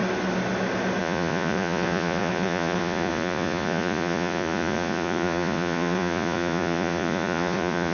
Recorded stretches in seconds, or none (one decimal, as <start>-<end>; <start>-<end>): 0.0-1.0